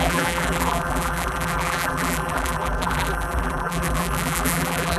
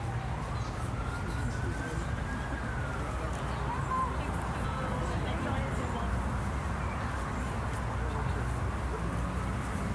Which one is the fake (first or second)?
first